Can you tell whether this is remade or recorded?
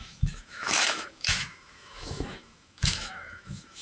remade